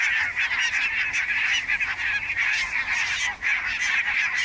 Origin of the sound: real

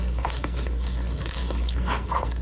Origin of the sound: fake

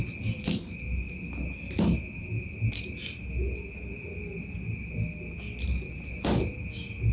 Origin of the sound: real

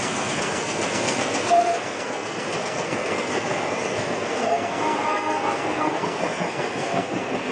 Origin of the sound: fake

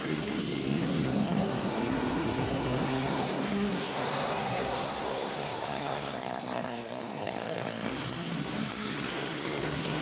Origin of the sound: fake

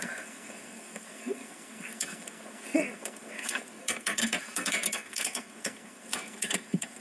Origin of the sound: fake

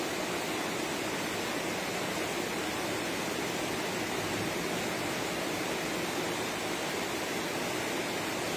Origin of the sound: real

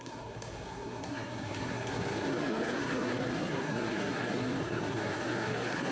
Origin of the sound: fake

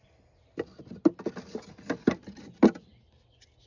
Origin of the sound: real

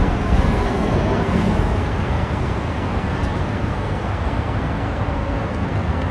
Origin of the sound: fake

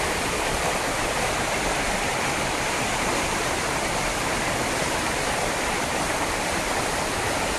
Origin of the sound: real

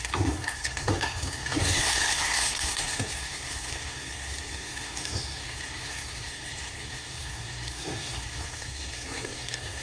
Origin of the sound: fake